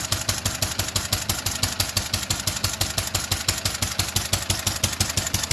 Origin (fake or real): real